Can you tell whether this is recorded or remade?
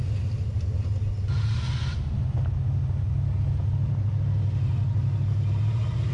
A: recorded